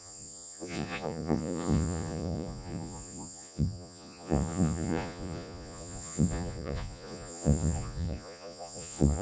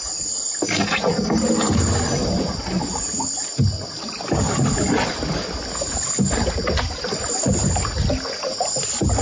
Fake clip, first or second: first